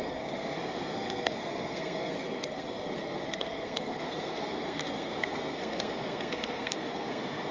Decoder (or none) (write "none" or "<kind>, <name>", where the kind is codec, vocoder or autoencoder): codec, SNAC